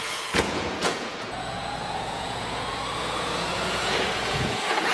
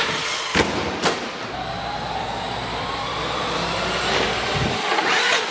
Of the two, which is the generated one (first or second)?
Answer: first